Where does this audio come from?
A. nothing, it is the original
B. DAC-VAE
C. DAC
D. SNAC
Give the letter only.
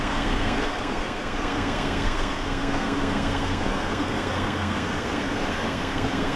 D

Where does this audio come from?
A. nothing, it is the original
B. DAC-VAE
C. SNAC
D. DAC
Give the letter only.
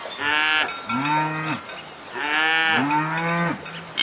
A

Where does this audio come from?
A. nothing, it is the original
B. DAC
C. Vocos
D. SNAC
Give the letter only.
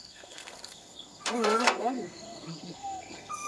D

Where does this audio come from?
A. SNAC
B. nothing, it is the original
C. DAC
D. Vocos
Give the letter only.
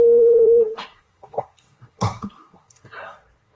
A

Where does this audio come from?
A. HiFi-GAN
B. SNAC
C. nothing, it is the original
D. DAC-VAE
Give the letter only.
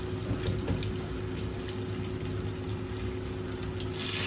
C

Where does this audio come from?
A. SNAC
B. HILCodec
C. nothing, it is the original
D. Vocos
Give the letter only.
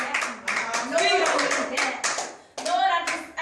C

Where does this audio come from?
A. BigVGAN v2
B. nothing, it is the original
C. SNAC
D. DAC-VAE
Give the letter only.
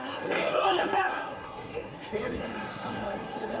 C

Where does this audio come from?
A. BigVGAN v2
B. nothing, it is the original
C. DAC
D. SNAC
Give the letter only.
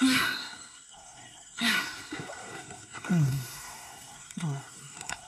D